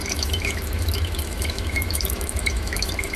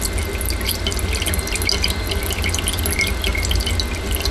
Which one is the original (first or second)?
second